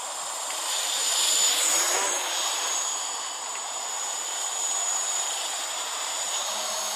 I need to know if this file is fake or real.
fake